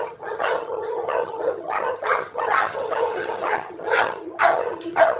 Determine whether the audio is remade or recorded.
remade